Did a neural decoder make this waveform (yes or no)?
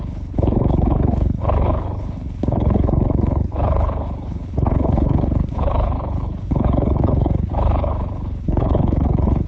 yes